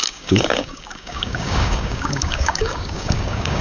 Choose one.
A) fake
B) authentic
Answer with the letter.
A